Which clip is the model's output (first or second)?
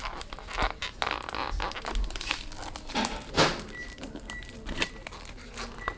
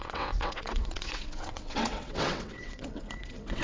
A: second